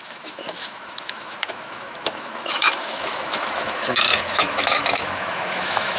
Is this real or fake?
fake